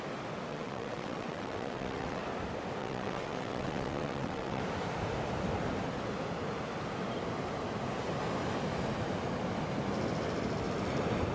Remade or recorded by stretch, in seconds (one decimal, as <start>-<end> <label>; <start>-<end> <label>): 0.0-0.5 recorded; 0.5-2.2 remade; 2.2-2.8 recorded; 2.8-4.6 remade; 4.6-11.3 recorded